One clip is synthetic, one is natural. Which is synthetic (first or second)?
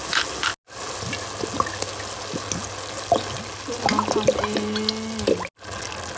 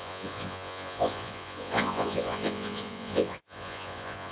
second